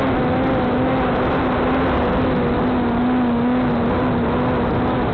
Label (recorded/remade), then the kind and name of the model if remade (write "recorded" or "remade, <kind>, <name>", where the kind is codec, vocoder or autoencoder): recorded